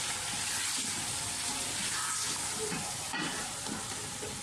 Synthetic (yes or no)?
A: no